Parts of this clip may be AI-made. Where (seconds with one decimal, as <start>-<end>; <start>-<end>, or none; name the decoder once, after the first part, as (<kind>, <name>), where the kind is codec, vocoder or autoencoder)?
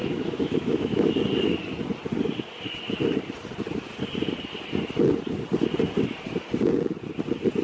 0.0-1.1 (autoencoder, DAC-VAE)